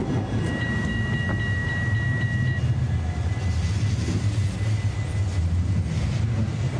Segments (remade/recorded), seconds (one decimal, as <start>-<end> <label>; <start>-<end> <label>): 0.0-6.8 recorded